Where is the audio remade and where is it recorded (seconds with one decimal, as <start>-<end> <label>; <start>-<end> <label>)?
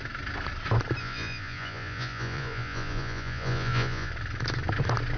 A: 0.0-1.0 recorded; 1.0-4.1 remade; 4.1-5.2 recorded